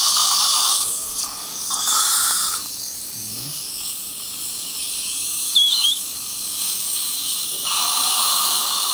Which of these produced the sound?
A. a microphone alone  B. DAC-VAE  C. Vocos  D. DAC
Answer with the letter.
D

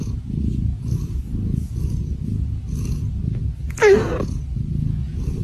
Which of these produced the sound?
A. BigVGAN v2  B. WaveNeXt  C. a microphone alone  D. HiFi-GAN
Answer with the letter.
C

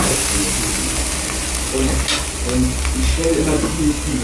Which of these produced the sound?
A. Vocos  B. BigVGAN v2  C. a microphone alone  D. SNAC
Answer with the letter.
C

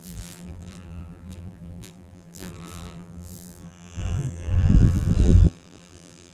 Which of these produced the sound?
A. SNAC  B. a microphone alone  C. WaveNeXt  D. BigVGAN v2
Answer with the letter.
D